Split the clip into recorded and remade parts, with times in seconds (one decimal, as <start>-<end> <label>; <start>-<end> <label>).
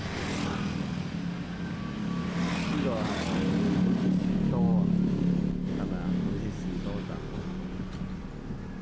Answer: 0.0-8.8 recorded